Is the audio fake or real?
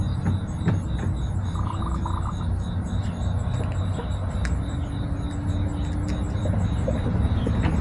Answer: real